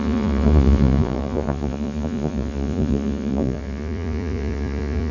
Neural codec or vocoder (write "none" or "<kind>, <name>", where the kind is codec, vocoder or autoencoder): vocoder, Vocos